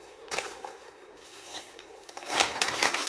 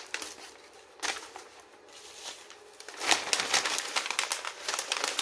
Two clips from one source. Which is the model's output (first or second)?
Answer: first